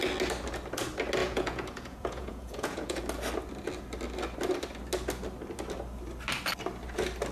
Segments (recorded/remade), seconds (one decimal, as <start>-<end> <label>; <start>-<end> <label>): 0.0-1.2 recorded; 1.2-3.0 remade; 3.0-7.3 recorded